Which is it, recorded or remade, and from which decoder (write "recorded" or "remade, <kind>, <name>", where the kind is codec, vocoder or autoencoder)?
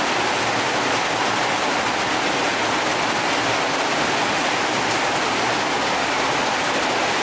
recorded